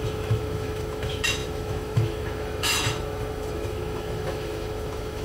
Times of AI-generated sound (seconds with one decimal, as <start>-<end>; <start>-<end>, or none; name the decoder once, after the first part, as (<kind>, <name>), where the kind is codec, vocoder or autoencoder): 0.0-5.2 (autoencoder, DAC-VAE)

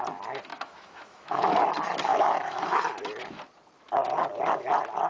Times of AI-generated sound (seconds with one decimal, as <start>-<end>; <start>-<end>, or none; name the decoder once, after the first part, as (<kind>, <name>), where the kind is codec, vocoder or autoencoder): 0.5-1.5 (autoencoder, DAC-VAE); 2.1-2.8

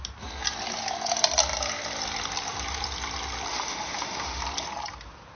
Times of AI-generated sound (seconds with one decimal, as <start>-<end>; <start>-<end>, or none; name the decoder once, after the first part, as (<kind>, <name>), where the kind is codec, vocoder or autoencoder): 3.5-4.4 (autoencoder, DAC-VAE)